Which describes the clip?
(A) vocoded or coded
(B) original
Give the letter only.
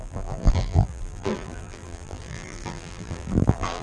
A